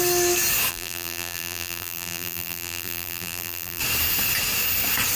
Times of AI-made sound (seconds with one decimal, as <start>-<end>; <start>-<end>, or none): 0.7-3.8